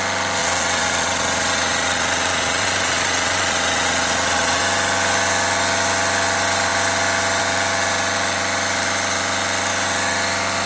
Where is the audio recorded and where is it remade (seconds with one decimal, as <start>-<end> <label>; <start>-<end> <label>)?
0.0-0.4 recorded; 0.4-4.6 remade; 4.6-10.7 recorded